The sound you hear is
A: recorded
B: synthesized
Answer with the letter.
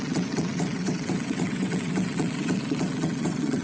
B